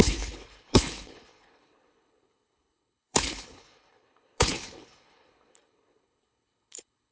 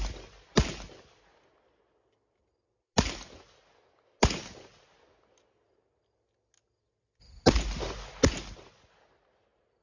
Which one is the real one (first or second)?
second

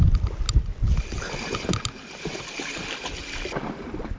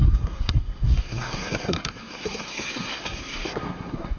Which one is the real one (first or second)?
first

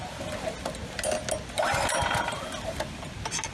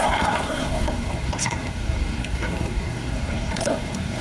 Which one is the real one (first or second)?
first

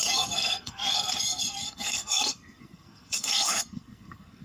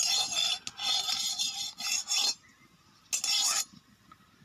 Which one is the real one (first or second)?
second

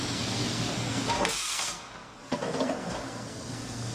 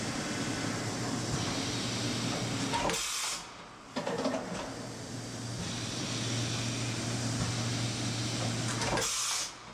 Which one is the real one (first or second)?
second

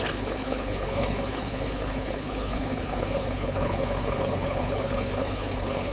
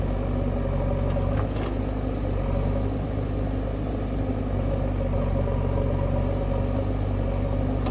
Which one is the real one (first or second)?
second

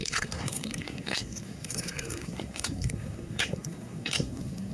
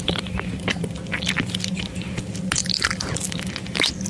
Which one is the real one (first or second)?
second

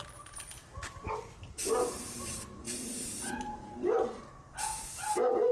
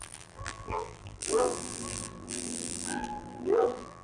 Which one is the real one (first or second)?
first